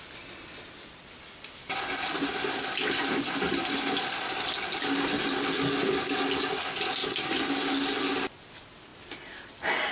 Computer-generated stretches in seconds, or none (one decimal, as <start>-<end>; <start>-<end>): 8.9-9.5